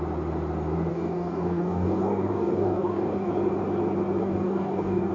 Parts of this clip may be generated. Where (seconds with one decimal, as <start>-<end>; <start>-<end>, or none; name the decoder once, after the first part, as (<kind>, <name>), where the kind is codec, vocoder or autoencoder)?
0.9-3.3 (codec, DAC); 4.2-5.1